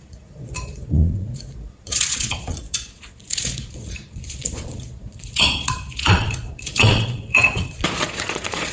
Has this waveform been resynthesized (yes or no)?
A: yes